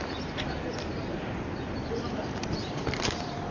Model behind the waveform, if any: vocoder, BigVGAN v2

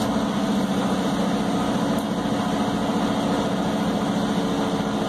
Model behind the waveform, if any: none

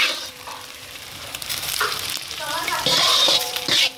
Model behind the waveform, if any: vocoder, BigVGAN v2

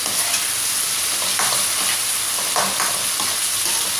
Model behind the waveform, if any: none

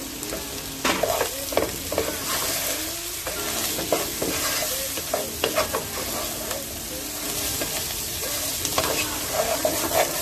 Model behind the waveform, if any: none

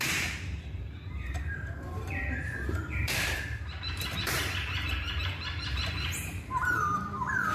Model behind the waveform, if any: vocoder, BigVGAN v2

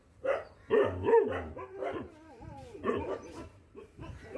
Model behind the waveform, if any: vocoder, BigVGAN v2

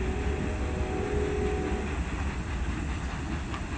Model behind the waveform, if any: none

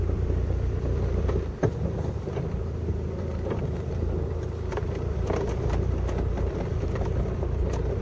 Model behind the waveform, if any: vocoder, BigVGAN v2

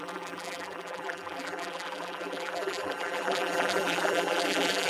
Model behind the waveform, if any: vocoder, BigVGAN v2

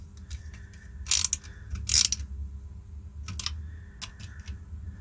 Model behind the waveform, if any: none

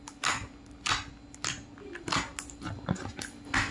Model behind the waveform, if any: none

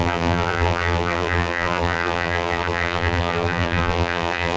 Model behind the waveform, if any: vocoder, BigVGAN v2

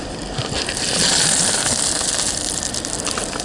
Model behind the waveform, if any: vocoder, BigVGAN v2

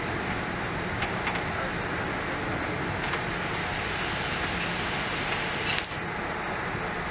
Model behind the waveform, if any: none